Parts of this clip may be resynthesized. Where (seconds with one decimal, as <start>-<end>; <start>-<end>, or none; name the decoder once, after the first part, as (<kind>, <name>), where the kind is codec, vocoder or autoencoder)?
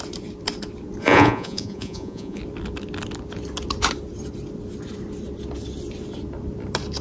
1.0-2.4 (vocoder, Vocos)